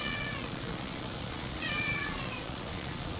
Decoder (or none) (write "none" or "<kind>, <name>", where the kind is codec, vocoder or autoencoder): vocoder, Vocos